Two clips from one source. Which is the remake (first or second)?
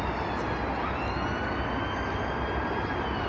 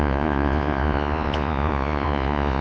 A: second